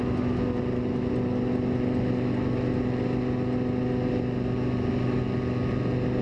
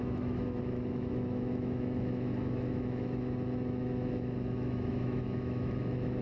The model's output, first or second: second